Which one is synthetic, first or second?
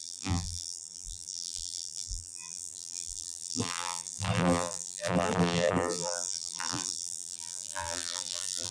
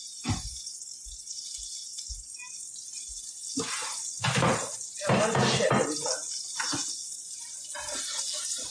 first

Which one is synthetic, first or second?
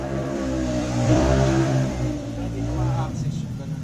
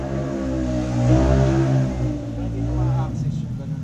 first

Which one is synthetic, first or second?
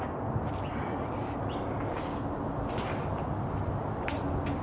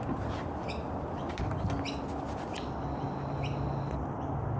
second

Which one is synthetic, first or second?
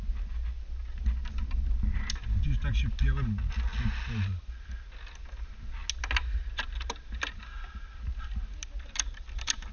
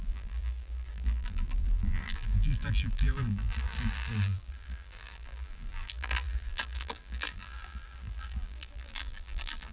second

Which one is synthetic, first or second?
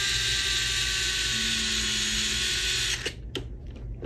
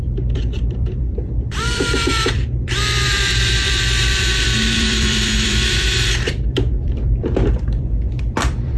second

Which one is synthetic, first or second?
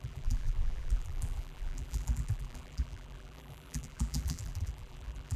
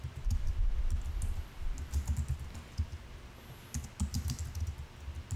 first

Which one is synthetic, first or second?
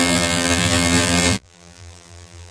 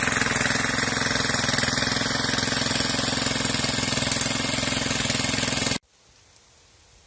first